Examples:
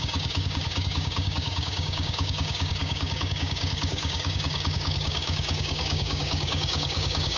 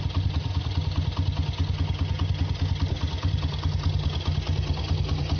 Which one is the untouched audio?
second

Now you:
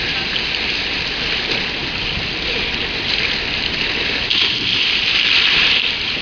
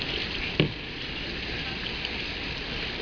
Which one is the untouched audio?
first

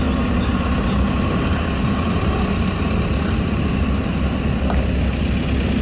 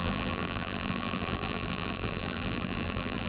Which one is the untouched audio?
first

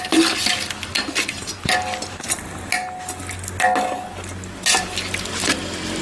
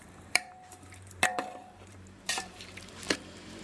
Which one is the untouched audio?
first